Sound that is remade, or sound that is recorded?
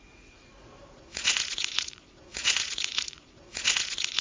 remade